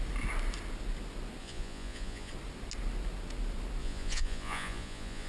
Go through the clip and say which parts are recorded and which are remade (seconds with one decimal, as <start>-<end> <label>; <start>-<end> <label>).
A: 0.0-1.4 recorded; 1.4-2.3 remade; 2.3-3.8 recorded; 3.8-5.3 remade